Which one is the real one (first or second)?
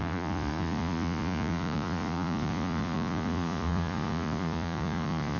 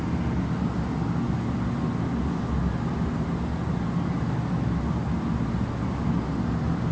second